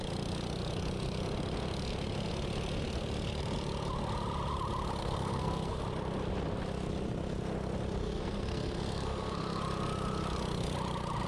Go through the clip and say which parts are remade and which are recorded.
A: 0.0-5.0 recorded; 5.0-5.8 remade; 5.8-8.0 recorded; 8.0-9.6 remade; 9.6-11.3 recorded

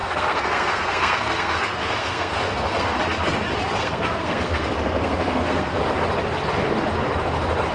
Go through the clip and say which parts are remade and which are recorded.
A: 0.0-3.0 remade; 3.0-3.8 recorded; 3.8-5.8 remade; 5.8-7.7 recorded

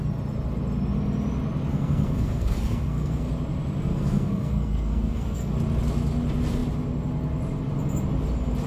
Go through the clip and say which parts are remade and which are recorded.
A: 0.0-1.7 recorded; 1.7-3.3 remade; 3.3-3.9 recorded; 3.9-5.5 remade; 5.5-8.7 recorded

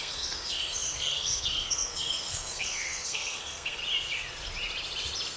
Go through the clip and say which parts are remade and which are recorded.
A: 0.0-3.8 remade; 3.8-5.4 recorded

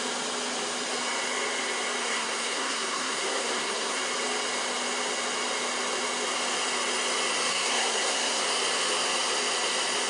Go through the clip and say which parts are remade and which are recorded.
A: 0.0-2.0 recorded; 2.0-4.0 remade; 4.0-7.5 recorded; 7.5-8.4 remade; 8.4-10.1 recorded

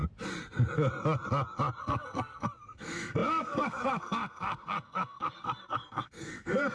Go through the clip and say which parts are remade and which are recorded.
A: 0.0-1.8 recorded; 1.8-6.7 remade

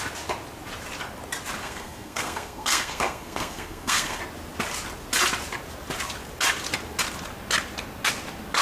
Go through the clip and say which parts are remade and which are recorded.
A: 0.0-1.6 recorded; 1.6-4.2 remade; 4.2-8.6 recorded

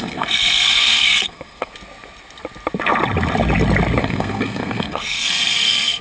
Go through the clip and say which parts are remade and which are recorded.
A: 0.0-1.7 remade; 1.7-4.0 recorded; 4.0-6.0 remade